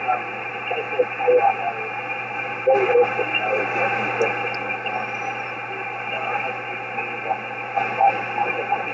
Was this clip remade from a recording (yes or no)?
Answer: no